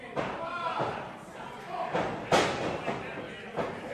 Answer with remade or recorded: recorded